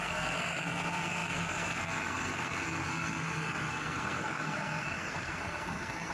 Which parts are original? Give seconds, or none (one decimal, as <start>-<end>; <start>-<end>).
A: none